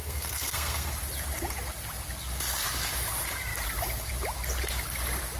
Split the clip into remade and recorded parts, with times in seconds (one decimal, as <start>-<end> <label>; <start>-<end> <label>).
0.0-0.9 remade; 0.9-5.4 recorded